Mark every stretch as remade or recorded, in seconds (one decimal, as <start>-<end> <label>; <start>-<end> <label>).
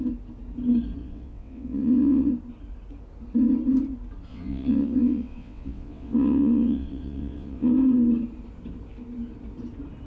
0.0-1.0 recorded; 1.0-2.3 remade; 2.3-4.3 recorded; 4.3-7.7 remade; 7.7-10.1 recorded